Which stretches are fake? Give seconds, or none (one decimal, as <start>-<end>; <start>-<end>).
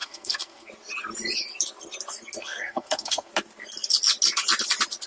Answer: 0.0-0.7; 2.4-3.3